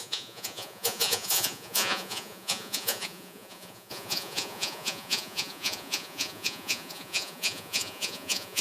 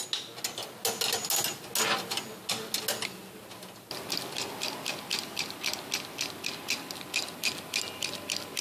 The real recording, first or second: second